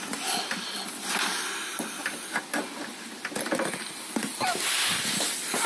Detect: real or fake real